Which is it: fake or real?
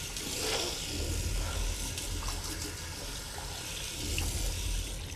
real